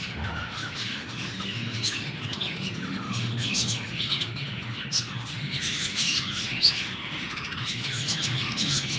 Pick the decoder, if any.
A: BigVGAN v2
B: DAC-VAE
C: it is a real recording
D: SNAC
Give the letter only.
B